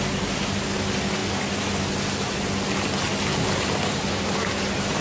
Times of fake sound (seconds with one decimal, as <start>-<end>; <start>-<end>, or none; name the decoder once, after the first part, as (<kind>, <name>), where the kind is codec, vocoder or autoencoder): none